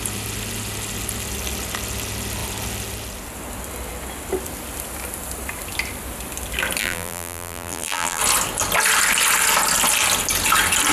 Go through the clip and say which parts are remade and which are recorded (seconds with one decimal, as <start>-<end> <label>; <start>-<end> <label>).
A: 0.0-6.8 recorded; 6.8-8.2 remade; 8.2-10.9 recorded